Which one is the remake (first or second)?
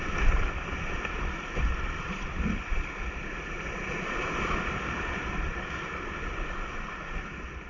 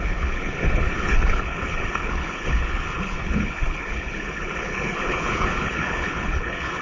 second